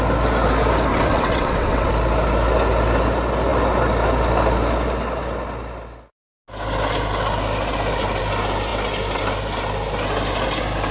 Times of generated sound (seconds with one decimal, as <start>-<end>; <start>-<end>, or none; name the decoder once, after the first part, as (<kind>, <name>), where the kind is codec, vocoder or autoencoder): 0.9-1.9 (vocoder, WaveNeXt)